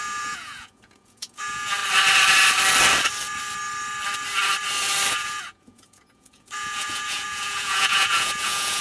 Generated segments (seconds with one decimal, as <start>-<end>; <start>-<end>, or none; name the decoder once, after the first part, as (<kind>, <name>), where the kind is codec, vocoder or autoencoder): 0.0-1.8 (vocoder, Vocos); 5.1-8.8